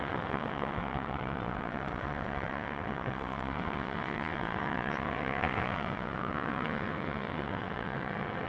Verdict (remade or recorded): remade